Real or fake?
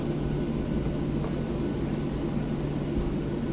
real